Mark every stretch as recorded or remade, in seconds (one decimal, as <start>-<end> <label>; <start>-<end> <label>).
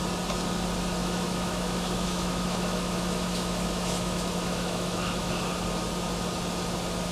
0.0-1.0 recorded; 1.0-5.3 remade; 5.3-7.1 recorded